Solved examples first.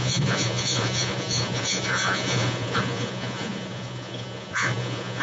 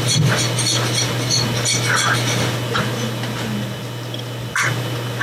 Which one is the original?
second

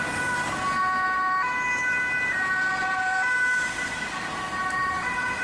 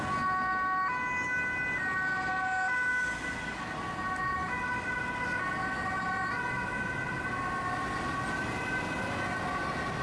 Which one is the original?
second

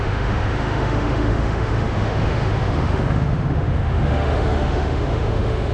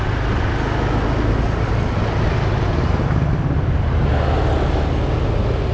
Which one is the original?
second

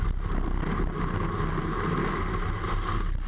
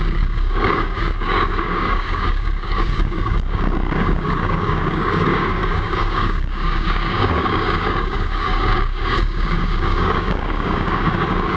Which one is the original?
first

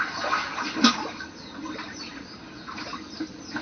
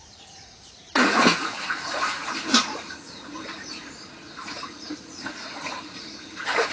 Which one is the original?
first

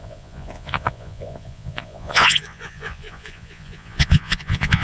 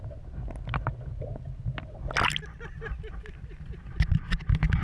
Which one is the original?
second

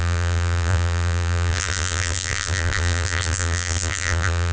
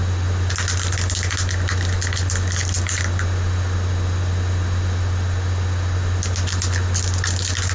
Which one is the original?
second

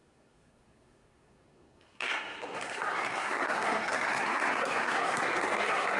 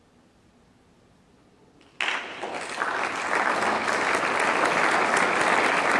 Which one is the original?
second